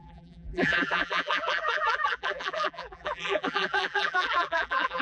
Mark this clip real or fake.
fake